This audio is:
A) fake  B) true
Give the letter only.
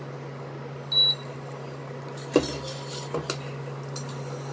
B